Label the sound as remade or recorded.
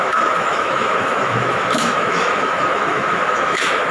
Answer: remade